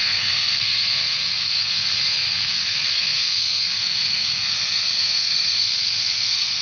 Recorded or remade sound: remade